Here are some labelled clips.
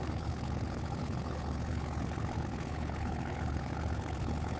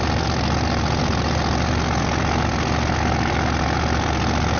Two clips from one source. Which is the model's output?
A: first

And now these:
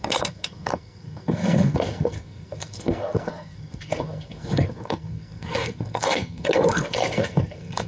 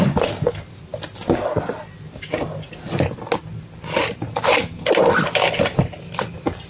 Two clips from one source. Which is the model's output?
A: first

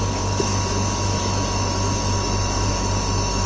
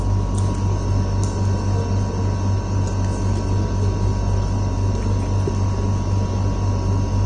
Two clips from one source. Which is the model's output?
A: first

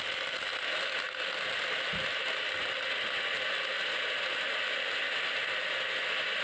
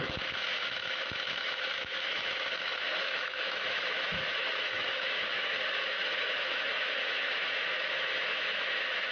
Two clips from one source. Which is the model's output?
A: second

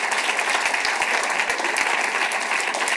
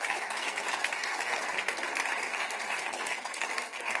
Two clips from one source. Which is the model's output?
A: second